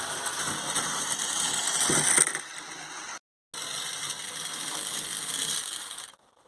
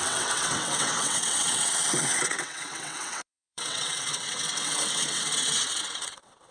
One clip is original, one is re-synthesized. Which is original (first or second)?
first